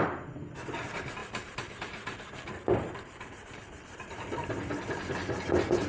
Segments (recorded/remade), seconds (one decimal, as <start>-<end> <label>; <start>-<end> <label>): 0.0-1.2 recorded; 1.2-4.5 remade; 4.5-5.9 recorded

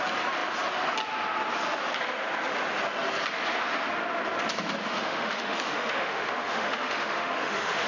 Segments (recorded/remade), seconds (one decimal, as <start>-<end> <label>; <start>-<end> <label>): 0.0-4.8 recorded; 4.8-7.9 remade

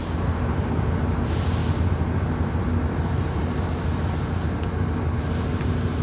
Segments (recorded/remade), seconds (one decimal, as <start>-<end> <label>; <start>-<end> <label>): 0.0-1.6 remade; 1.6-5.2 recorded; 5.2-6.0 remade

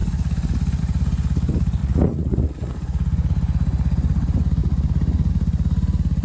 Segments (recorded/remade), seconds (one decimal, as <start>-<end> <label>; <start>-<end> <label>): 0.0-1.8 recorded; 1.8-2.7 remade; 2.7-6.2 recorded

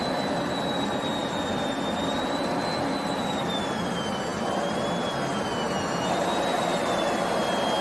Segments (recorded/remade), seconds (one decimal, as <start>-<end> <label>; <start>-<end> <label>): 0.0-7.8 recorded

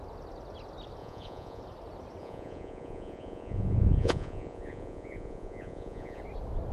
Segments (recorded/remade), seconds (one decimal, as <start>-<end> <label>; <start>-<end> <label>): 0.0-1.0 recorded; 1.0-1.6 remade; 1.6-2.2 recorded; 2.2-6.2 remade; 6.2-6.7 recorded